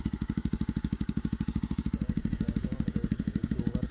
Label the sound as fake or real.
fake